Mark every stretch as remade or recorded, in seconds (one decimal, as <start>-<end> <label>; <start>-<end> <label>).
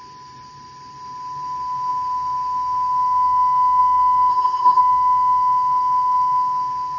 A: 0.0-4.3 recorded; 4.3-4.8 remade; 4.8-7.0 recorded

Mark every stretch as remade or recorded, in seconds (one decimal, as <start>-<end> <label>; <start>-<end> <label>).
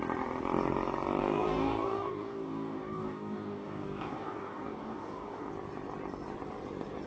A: 0.0-1.2 recorded; 1.2-5.5 remade; 5.5-7.1 recorded